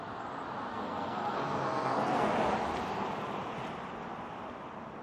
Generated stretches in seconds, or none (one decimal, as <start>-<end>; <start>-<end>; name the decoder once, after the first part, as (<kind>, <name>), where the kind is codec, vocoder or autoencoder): 0.7-2.3 (codec, SNAC)